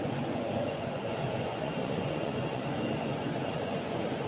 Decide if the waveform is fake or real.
fake